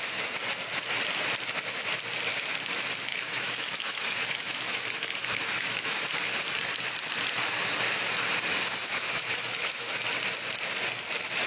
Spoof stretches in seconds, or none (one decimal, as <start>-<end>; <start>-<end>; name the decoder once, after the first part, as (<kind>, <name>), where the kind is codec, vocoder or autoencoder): 3.1-6.1 (autoencoder, DAC-VAE); 8.5-9.9